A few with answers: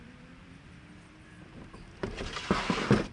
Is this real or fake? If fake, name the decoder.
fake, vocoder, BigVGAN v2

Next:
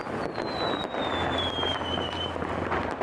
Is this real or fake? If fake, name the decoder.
real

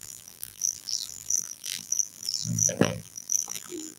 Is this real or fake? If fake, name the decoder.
fake, vocoder, BigVGAN v2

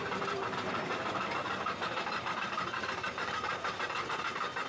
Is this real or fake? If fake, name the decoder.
fake, vocoder, BigVGAN v2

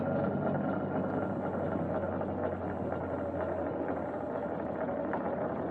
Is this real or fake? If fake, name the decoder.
real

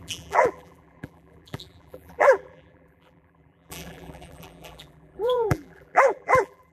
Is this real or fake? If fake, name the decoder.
fake, vocoder, BigVGAN v2